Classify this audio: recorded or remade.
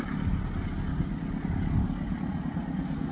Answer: recorded